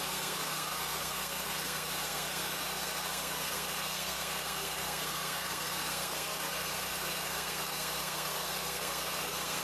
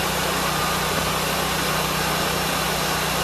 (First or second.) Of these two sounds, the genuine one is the second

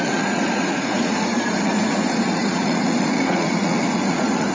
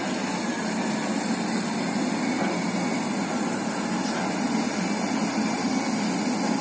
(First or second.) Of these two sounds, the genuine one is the second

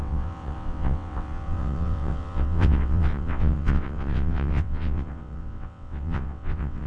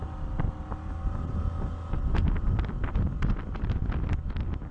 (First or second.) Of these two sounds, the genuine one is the second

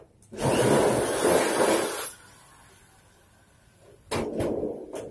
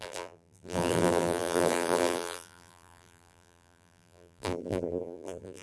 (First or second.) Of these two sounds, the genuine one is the first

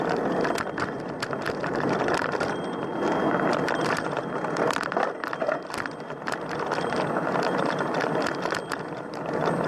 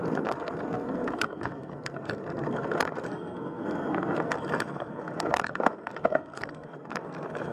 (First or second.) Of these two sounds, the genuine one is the first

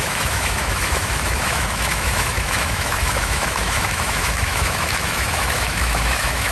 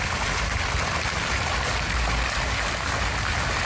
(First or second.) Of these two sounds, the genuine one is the second